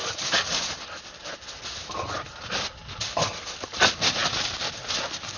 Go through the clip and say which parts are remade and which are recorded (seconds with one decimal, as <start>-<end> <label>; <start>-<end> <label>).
0.0-5.4 recorded

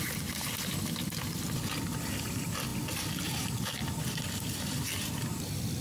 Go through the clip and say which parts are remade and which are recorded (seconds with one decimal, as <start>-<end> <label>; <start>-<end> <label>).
0.0-5.8 recorded

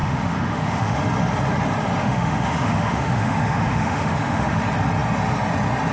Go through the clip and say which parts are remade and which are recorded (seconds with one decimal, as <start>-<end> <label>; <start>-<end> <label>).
0.0-1.0 remade; 1.0-2.0 recorded; 2.0-4.6 remade; 4.6-5.9 recorded

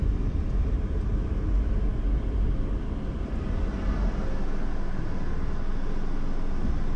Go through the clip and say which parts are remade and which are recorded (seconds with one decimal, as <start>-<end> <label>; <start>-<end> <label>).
0.0-7.0 recorded

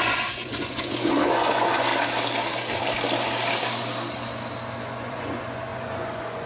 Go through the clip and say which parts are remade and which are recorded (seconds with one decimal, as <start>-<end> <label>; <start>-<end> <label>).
0.0-1.9 remade; 1.9-4.8 recorded; 4.8-6.5 remade

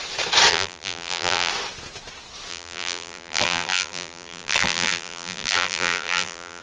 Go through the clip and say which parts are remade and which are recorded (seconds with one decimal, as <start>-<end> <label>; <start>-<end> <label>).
0.0-0.5 recorded; 0.5-1.5 remade; 1.5-2.5 recorded; 2.5-6.6 remade

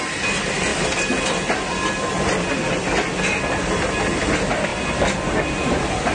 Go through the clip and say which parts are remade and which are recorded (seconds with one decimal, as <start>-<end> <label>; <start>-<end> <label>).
0.0-6.1 recorded

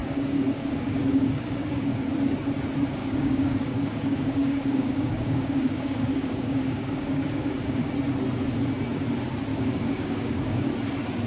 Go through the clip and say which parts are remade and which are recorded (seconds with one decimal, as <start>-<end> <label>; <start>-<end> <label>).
0.0-2.1 remade; 2.1-3.0 recorded; 3.0-7.9 remade; 7.9-9.5 recorded; 9.5-10.7 remade; 10.7-11.3 recorded